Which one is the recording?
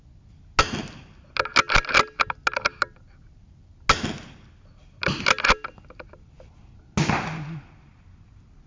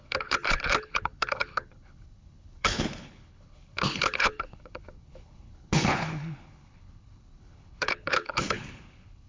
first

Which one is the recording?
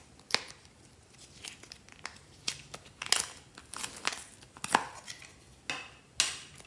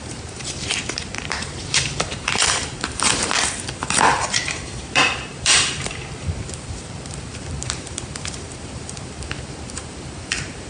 first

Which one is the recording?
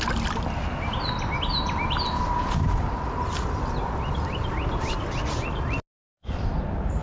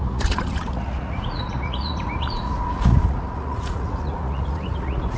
first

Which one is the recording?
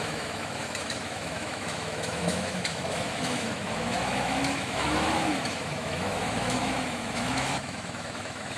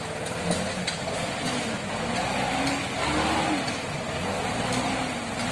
second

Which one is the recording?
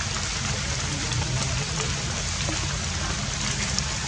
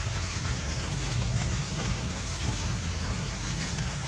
first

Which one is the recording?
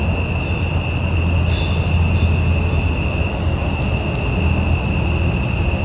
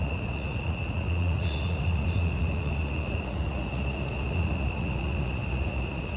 first